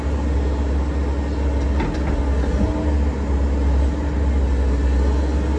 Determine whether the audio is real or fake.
real